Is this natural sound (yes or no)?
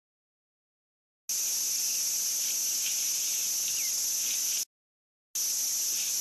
yes